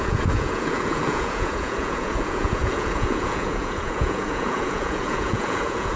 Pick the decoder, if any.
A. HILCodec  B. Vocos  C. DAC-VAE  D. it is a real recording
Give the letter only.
B